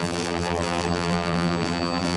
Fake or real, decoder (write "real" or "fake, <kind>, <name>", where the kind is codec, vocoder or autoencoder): fake, vocoder, BigVGAN v2